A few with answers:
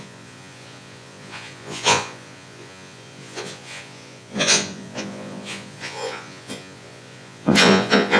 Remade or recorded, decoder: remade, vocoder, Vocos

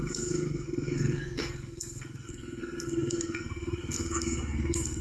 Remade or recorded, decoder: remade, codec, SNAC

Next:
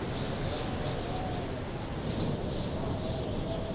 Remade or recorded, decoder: recorded